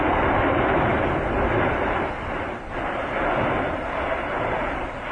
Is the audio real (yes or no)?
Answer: yes